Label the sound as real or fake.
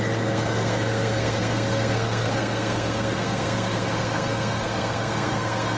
fake